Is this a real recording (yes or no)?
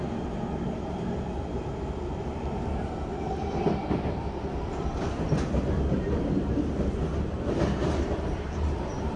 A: no